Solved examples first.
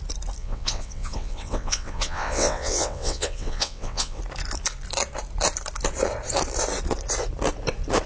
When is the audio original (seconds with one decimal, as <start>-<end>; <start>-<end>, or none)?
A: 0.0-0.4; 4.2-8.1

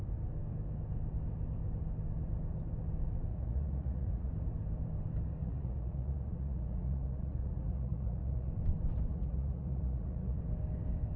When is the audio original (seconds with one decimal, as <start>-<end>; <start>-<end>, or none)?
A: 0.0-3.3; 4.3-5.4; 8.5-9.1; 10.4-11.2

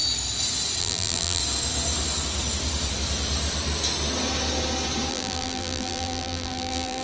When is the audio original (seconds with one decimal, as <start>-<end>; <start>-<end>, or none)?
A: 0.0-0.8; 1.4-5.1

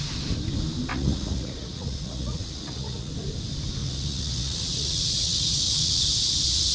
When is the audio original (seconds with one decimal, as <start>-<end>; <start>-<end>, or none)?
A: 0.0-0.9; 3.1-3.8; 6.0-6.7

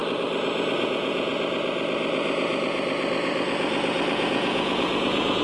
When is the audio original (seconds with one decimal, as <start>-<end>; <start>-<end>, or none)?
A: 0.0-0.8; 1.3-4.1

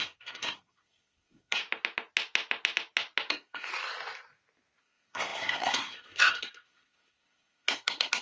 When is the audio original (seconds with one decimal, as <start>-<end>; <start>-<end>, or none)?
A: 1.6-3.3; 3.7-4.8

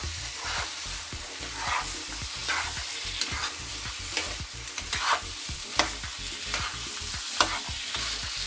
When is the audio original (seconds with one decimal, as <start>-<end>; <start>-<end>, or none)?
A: 6.1-8.5